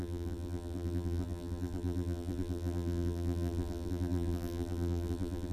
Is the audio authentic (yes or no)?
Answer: no